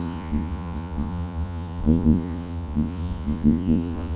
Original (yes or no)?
no